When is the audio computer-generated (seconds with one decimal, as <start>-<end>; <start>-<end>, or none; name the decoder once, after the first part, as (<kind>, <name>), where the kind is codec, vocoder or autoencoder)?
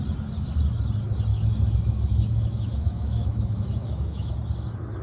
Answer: 1.3-4.3 (autoencoder, DAC-VAE)